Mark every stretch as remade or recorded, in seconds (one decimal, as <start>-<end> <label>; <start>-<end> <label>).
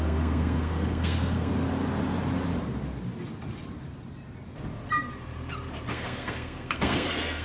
0.0-1.5 remade; 1.5-5.9 recorded; 5.9-7.4 remade